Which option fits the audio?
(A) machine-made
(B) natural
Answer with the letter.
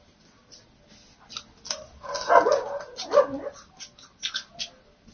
B